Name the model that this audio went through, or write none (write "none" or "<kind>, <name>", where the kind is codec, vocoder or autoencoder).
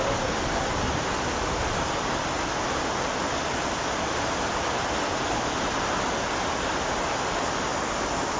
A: none